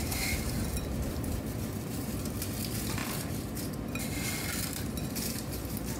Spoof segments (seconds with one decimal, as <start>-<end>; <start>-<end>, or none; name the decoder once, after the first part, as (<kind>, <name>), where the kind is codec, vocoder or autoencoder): none